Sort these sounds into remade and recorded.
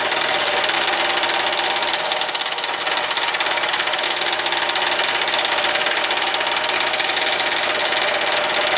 recorded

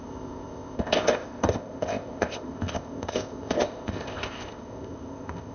remade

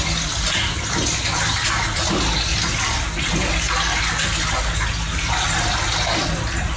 recorded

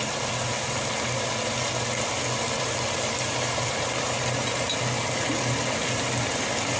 recorded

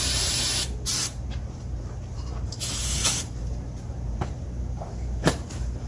remade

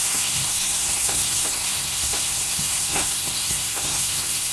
remade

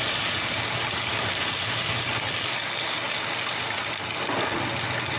recorded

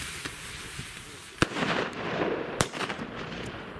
remade